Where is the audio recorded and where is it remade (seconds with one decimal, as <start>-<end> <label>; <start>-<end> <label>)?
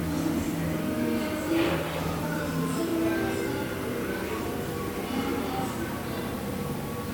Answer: 0.0-1.2 recorded; 1.2-2.9 remade; 2.9-4.2 recorded; 4.2-7.1 remade